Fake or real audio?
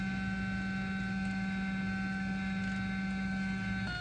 real